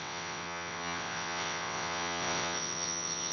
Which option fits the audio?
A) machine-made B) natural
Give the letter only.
A